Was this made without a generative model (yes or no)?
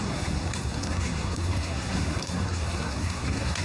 no